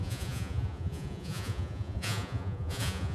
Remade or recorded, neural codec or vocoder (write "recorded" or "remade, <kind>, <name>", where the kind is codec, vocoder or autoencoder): remade, vocoder, Vocos